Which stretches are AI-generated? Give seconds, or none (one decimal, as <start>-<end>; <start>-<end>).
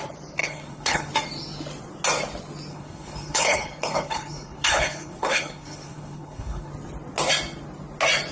0.4-1.1; 2.7-6.7